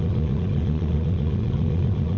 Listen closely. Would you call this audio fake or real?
fake